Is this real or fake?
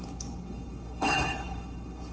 fake